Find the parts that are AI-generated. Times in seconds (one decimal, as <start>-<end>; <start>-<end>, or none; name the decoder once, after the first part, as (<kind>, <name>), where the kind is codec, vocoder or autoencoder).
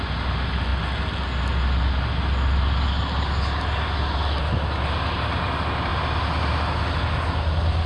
none